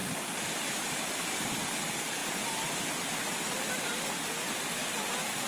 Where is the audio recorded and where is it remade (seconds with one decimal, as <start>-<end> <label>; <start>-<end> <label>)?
0.0-0.6 remade; 0.6-5.5 recorded